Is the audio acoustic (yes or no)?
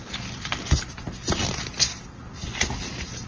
yes